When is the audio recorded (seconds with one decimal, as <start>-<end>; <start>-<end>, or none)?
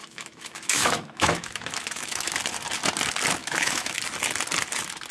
2.3-3.4; 4.0-5.1